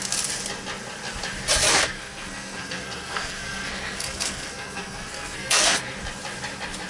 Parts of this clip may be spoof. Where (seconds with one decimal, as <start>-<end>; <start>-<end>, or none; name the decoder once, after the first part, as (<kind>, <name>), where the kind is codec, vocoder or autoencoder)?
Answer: 1.7-5.8 (codec, SNAC)